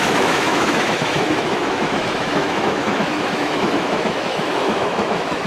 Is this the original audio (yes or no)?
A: no